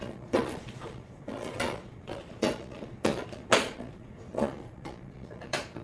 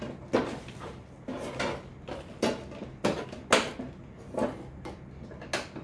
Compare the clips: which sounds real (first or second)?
second